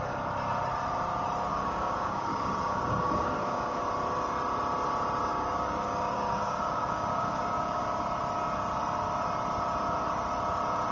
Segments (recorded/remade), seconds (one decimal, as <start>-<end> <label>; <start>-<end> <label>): 0.0-1.5 recorded; 1.5-3.8 remade; 3.8-5.3 recorded; 5.3-7.8 remade; 7.8-10.9 recorded